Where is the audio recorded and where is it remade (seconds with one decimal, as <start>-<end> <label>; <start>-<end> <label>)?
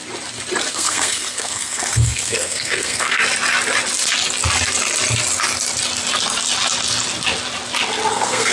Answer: 0.0-0.7 recorded; 0.7-3.2 remade; 3.2-8.1 recorded; 8.1-8.5 remade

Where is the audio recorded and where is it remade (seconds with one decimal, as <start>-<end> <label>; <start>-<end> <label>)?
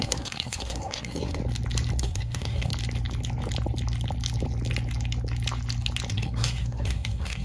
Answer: 0.0-1.4 remade; 1.4-2.0 recorded; 2.0-2.7 remade; 2.7-6.1 recorded; 6.1-7.4 remade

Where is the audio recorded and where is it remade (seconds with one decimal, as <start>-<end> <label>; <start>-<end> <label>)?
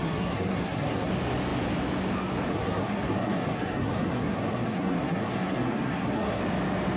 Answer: 0.0-1.1 remade; 1.1-2.5 recorded; 2.5-6.4 remade; 6.4-7.0 recorded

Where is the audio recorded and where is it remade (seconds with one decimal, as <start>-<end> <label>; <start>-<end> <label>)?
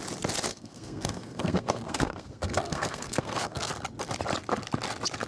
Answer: 0.0-0.5 recorded; 0.5-3.7 remade; 3.7-5.3 recorded